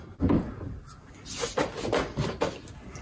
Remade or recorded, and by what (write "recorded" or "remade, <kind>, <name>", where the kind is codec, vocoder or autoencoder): recorded